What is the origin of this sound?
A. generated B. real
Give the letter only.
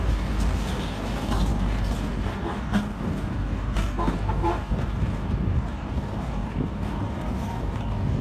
A